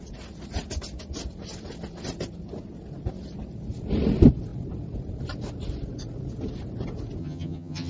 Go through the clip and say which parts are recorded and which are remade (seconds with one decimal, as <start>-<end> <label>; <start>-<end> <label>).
0.0-7.2 recorded; 7.2-7.9 remade